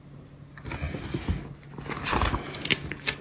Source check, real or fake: real